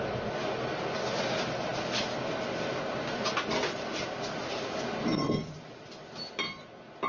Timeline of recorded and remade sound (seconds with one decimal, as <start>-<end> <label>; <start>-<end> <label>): 0.0-1.7 recorded; 1.7-2.8 remade; 2.8-5.1 recorded; 5.1-5.9 remade; 5.9-7.1 recorded